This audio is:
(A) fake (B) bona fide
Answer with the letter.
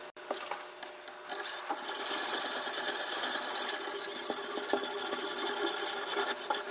B